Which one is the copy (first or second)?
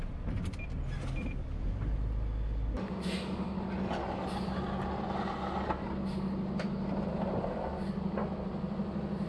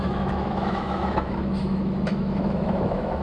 second